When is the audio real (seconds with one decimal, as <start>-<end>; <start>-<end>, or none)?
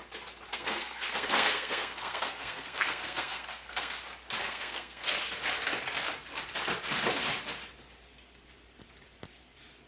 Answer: 0.0-0.5; 3.9-4.4; 5.1-9.9